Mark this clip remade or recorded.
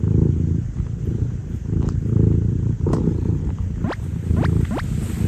recorded